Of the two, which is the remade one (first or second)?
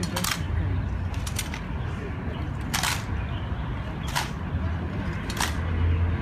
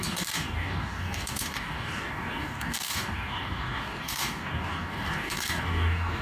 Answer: second